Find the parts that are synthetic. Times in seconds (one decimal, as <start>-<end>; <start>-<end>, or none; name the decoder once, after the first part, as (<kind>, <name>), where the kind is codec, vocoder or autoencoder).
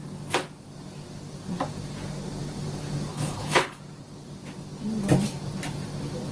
3.1-3.8 (codec, HILCodec)